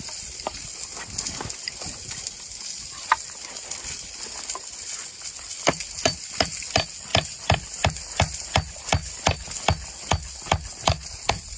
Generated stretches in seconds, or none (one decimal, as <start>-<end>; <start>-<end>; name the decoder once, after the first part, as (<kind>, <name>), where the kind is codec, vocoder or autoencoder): none